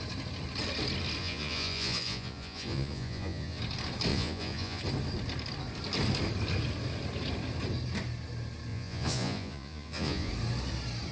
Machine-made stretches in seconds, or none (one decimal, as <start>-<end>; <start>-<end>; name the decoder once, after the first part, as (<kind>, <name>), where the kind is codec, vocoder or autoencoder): 1.2-3.6 (vocoder, Vocos); 4.1-4.8; 8.7-10.3